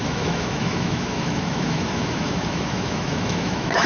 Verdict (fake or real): fake